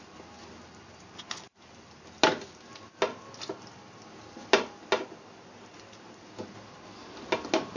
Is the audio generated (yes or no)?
no